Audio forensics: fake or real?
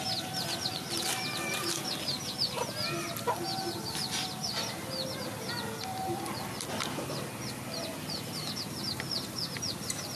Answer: real